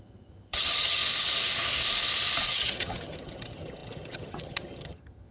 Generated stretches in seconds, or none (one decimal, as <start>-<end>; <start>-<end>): 0.0-1.0; 2.5-5.3